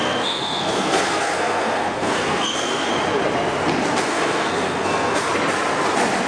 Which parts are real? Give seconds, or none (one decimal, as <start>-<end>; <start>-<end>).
2.9-4.1; 5.3-6.3